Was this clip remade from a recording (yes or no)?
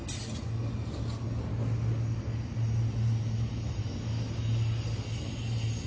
no